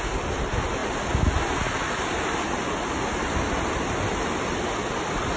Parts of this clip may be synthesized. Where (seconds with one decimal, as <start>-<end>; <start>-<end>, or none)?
none